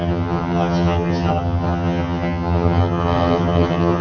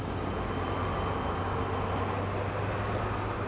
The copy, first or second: first